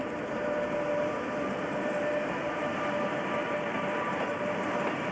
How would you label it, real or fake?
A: fake